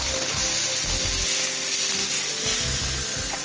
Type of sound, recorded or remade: recorded